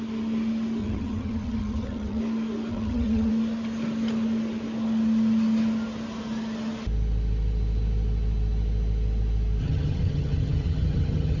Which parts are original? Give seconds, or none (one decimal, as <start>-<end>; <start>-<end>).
0.0-0.8; 2.2-2.7; 3.3-9.6